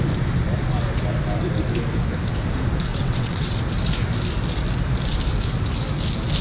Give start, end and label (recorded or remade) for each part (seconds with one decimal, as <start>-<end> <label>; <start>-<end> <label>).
0.0-2.9 recorded; 2.9-3.6 remade; 3.6-6.4 recorded